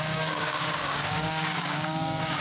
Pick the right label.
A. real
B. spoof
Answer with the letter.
B